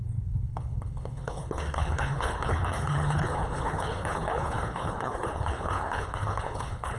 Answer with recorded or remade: remade